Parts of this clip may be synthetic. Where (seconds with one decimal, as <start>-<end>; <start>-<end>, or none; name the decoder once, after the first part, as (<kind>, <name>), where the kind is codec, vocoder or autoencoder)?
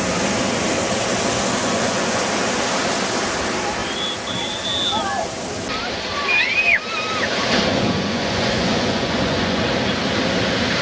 1.6-2.2 (vocoder, Vocos); 7.7-9.6